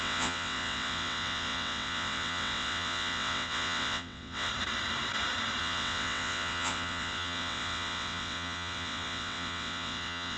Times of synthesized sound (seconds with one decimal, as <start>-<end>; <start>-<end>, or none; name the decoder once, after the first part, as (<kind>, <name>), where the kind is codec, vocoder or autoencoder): 0.0-4.5 (vocoder, WaveNeXt); 5.6-10.4